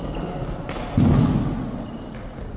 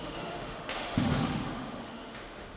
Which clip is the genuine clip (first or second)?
first